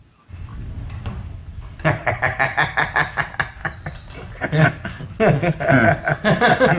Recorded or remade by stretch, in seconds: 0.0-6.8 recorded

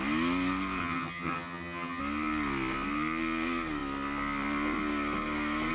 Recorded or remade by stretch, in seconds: 0.0-0.8 recorded; 0.8-2.0 remade; 2.0-5.7 recorded

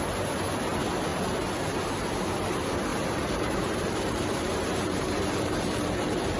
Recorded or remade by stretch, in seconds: 0.0-2.9 recorded; 2.9-6.4 remade

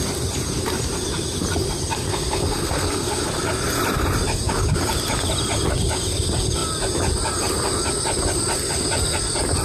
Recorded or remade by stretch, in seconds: 0.0-2.1 recorded; 2.1-3.3 remade; 3.3-9.6 recorded

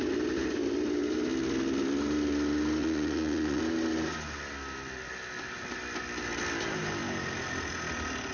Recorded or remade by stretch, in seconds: 0.0-2.8 recorded; 2.8-3.6 remade; 3.6-8.3 recorded

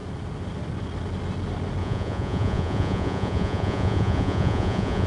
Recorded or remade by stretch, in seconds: 0.0-1.8 recorded; 1.8-5.1 remade

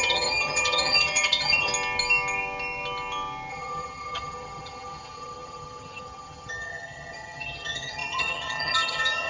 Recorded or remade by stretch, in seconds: 0.0-1.7 remade; 1.7-3.5 recorded; 3.5-9.3 remade